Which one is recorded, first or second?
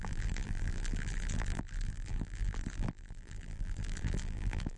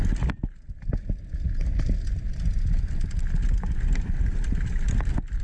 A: second